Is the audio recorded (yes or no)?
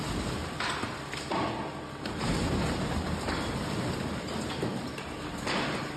yes